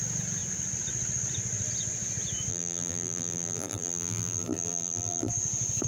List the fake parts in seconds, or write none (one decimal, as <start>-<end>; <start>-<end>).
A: 2.5-5.3